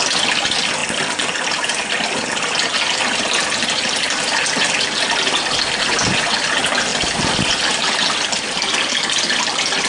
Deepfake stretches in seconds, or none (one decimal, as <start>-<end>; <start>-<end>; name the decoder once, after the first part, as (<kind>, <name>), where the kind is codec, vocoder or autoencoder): none